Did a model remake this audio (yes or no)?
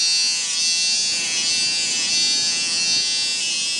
no